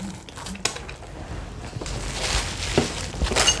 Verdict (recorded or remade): recorded